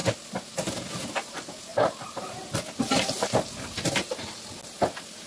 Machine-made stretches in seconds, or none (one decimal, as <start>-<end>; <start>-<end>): none